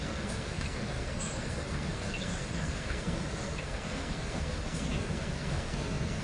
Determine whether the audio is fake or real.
fake